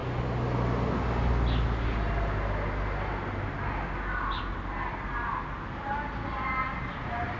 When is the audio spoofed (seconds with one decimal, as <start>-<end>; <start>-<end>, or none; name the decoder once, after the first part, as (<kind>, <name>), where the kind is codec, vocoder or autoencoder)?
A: 6.6-7.4 (vocoder, BigVGAN v2)